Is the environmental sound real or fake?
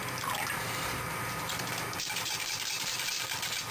fake